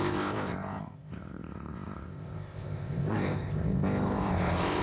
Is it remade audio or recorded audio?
remade